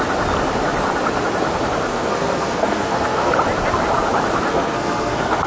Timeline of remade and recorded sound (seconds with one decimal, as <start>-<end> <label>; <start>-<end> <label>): 0.0-1.9 recorded; 1.9-3.3 remade; 3.3-4.5 recorded; 4.5-5.5 remade